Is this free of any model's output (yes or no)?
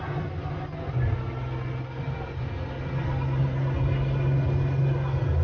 yes